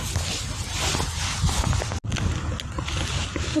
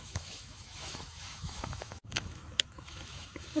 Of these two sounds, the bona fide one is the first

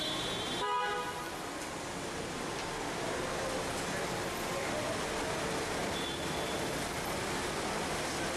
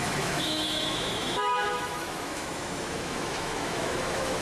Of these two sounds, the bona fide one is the first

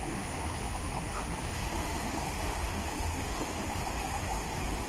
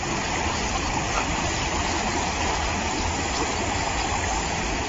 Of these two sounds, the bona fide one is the second